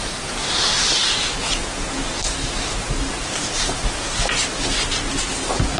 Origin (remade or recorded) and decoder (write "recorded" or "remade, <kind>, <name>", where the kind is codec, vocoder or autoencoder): recorded